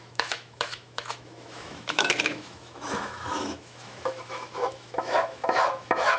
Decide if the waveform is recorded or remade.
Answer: remade